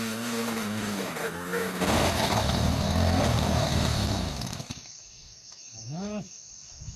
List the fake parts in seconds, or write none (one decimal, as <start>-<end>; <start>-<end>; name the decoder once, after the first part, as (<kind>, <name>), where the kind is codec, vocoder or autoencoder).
0.0-7.0 (codec, DAC)